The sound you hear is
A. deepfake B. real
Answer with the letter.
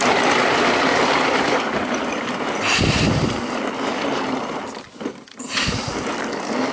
B